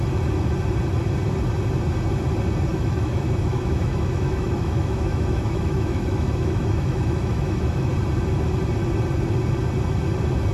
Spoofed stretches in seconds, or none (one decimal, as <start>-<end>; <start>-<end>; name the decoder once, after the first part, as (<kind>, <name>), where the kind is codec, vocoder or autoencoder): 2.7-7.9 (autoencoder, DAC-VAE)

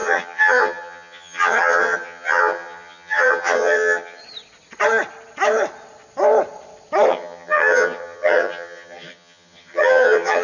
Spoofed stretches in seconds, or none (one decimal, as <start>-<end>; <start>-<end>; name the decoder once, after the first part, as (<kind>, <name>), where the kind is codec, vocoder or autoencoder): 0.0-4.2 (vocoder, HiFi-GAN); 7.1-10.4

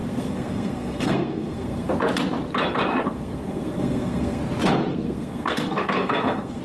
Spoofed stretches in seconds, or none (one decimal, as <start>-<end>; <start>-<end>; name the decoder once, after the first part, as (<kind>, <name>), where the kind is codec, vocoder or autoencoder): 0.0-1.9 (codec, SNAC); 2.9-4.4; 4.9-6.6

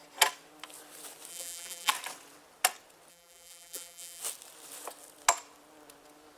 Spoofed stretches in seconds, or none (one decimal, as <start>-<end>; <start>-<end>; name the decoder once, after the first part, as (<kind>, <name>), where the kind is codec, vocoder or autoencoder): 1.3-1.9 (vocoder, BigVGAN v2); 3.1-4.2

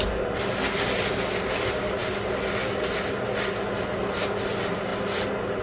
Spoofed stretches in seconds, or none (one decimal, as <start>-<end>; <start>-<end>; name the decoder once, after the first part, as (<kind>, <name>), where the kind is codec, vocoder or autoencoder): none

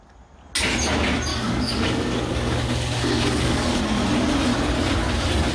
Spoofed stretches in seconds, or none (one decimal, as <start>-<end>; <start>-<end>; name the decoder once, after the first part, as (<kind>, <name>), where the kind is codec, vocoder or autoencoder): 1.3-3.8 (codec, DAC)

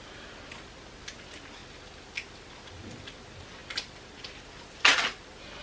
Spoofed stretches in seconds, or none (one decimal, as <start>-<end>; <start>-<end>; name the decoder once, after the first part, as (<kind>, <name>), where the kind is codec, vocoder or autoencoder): none

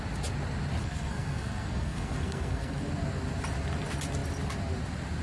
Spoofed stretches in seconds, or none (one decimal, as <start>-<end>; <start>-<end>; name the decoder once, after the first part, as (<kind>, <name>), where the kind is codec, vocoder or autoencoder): 0.8-2.9 (codec, SNAC)